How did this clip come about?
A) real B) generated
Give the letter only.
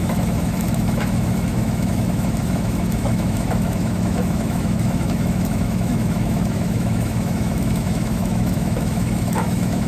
B